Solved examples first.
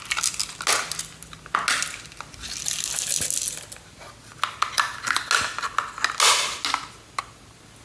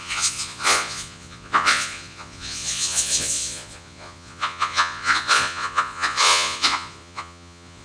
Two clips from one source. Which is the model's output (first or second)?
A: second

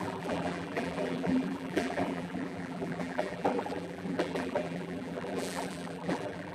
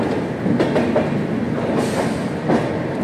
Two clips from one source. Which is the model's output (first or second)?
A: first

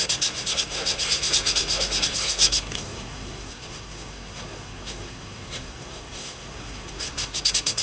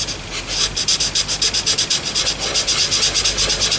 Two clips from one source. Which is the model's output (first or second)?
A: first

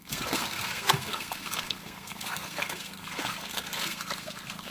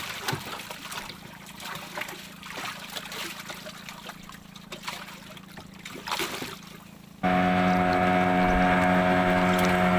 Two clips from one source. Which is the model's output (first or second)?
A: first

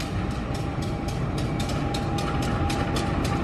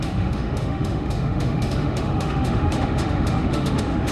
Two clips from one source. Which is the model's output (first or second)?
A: second